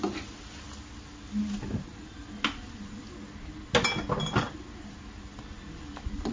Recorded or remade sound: recorded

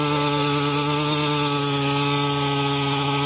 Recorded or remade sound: recorded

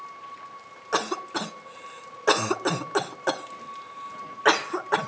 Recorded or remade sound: recorded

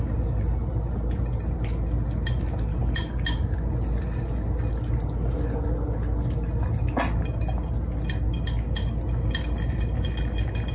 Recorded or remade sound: recorded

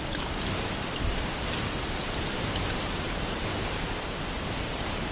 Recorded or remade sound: remade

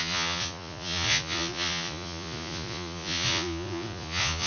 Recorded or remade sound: remade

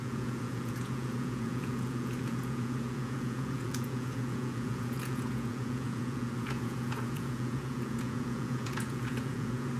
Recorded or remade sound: remade